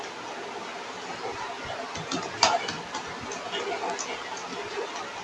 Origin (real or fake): real